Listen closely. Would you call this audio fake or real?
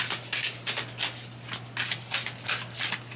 real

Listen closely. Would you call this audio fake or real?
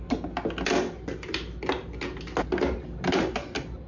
real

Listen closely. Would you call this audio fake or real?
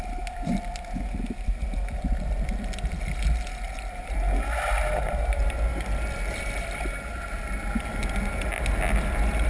real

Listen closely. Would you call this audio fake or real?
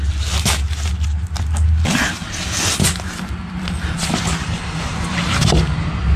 real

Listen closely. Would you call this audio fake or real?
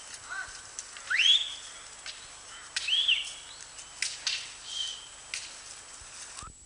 real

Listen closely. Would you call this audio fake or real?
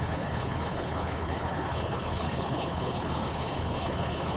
fake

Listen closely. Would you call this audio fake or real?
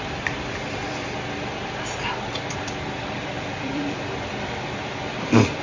fake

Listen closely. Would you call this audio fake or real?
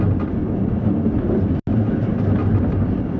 real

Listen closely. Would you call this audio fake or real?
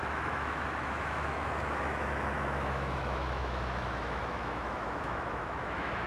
fake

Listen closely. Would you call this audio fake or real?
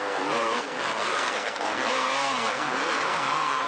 fake